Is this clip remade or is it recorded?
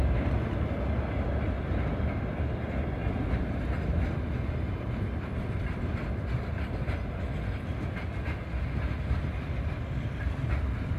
recorded